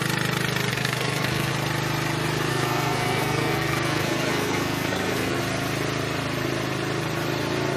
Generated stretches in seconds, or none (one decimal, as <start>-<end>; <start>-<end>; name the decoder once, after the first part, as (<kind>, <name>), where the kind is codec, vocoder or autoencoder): 0.7-1.5 (codec, SNAC); 2.5-5.4